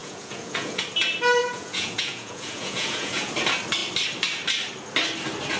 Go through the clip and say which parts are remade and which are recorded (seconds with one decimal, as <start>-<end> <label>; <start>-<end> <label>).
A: 0.0-0.8 remade; 0.8-1.4 recorded; 1.4-3.3 remade; 3.3-5.6 recorded